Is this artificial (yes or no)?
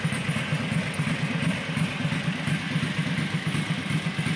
no